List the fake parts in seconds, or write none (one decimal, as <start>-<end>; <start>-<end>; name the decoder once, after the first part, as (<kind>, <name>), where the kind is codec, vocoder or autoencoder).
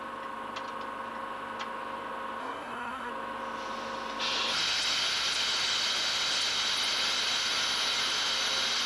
2.4-3.1 (codec, SNAC)